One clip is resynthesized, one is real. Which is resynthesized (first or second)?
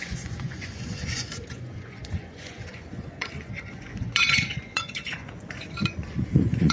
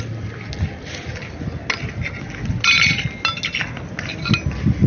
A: first